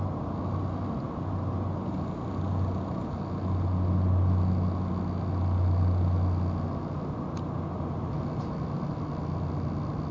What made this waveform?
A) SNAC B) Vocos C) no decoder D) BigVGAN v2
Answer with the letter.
C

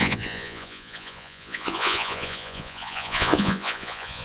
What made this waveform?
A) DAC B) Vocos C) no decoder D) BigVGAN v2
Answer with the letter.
B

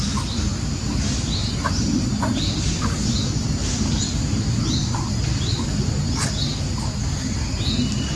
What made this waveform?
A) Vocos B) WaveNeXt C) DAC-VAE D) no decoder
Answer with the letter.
D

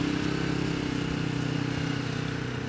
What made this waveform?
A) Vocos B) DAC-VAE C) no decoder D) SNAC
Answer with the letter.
C